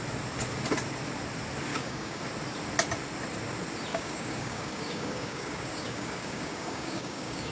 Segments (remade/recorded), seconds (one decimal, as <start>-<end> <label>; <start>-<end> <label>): 0.0-1.7 recorded; 1.7-2.2 remade; 2.2-3.9 recorded; 3.9-7.5 remade